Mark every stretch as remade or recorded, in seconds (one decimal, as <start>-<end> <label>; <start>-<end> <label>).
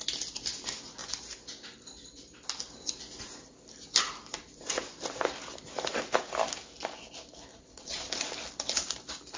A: 0.0-7.5 recorded; 7.5-8.1 remade; 8.1-9.4 recorded